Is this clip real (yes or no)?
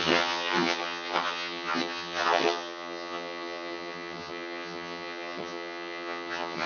no